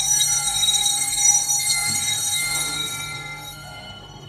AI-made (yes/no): yes